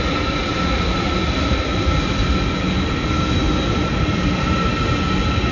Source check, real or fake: real